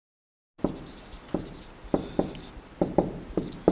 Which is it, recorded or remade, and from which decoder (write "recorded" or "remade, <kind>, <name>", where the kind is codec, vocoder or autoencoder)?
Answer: recorded